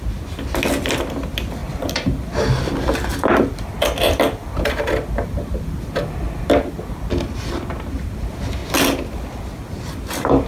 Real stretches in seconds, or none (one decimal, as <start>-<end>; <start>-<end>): 0.0-1.6; 6.8-10.5